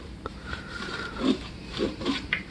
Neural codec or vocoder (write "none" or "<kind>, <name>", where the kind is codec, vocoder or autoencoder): vocoder, BigVGAN v2